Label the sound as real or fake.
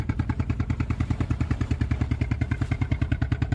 fake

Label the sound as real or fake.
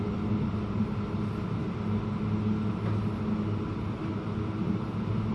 real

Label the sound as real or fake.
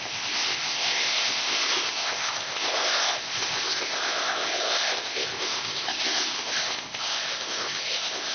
fake